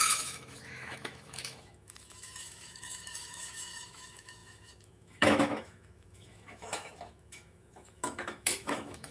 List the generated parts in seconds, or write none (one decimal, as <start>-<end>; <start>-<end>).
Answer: 0.0-9.1